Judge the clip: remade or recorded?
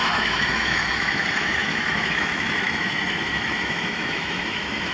remade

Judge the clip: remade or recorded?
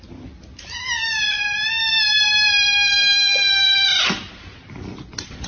recorded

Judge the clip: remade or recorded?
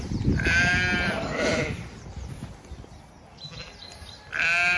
recorded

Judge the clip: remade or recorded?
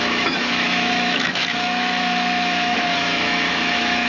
remade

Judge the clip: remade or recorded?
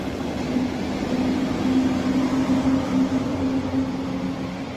recorded